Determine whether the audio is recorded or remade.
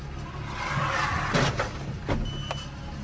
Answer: recorded